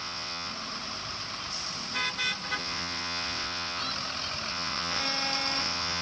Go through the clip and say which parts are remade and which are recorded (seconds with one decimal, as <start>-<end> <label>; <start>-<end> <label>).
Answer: 0.0-0.5 remade; 0.5-2.6 recorded; 2.6-3.8 remade; 3.8-4.5 recorded; 4.5-5.0 remade; 5.0-5.6 recorded; 5.6-6.0 remade